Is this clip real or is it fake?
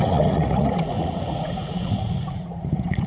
fake